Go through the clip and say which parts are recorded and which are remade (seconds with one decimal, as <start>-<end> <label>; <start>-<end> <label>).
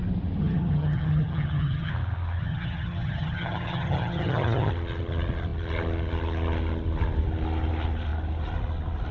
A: 0.0-0.4 recorded; 0.4-1.9 remade; 1.9-2.4 recorded; 2.4-4.7 remade; 4.7-9.1 recorded